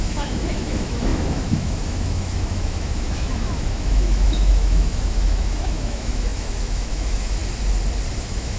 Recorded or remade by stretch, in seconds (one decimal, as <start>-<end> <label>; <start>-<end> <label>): 0.0-7.4 remade; 7.4-8.2 recorded; 8.2-8.6 remade

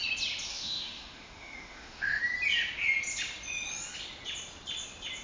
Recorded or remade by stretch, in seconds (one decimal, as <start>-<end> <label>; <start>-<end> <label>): 0.0-0.5 recorded; 0.5-2.2 remade; 2.2-5.2 recorded

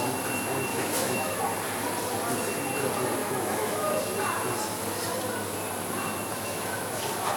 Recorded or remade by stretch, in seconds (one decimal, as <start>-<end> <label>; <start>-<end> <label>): 0.0-0.7 recorded; 0.7-1.4 remade; 1.4-3.2 recorded; 3.2-4.0 remade; 4.0-6.3 recorded; 6.3-7.0 remade; 7.0-7.4 recorded

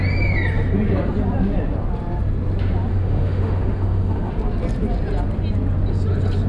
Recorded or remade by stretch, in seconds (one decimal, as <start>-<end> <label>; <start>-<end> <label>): 0.0-2.9 recorded; 2.9-4.3 remade; 4.3-6.5 recorded

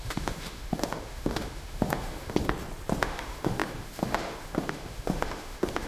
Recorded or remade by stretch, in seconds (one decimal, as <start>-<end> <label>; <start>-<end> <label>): 0.0-2.4 remade; 2.4-3.0 recorded; 3.0-5.9 remade

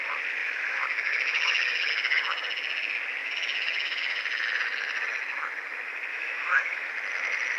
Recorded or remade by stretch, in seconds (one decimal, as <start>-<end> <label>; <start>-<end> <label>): 0.0-0.4 recorded; 0.4-1.9 remade; 1.9-3.2 recorded; 3.2-4.2 remade; 4.2-6.1 recorded; 6.1-6.9 remade; 6.9-7.6 recorded

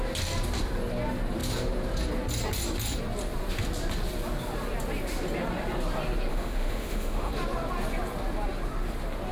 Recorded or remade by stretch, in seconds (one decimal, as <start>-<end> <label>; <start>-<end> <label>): 0.0-6.3 recorded; 6.3-7.3 remade; 7.3-9.3 recorded

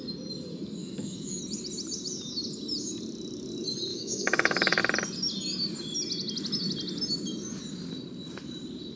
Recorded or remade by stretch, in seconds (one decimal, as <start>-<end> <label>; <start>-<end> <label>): 0.0-0.8 recorded; 0.8-1.4 remade; 1.4-3.9 recorded; 3.9-4.8 remade; 4.8-9.0 recorded